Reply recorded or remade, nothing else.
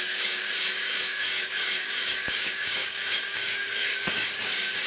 remade